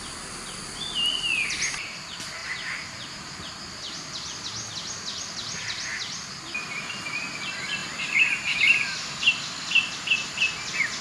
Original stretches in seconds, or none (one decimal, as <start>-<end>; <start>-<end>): 0.0-2.4; 3.5-7.8; 9.3-11.0